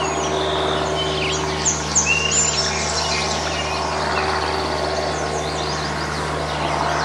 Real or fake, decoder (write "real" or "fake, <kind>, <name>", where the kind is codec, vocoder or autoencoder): real